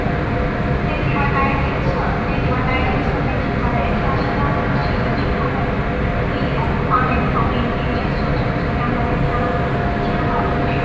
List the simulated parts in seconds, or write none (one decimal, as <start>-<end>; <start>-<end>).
none